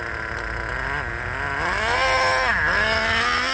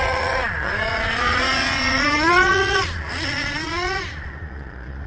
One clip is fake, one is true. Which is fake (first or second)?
second